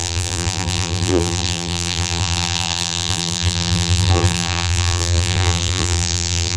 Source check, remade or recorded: remade